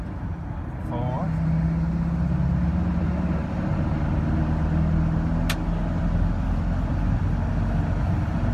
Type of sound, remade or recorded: recorded